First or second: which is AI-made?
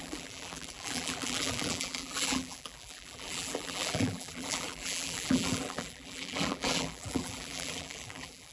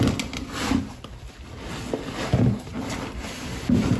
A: first